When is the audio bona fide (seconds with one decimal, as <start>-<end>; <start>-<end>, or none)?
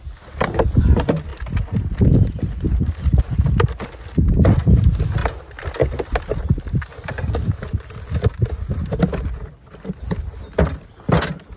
0.0-11.6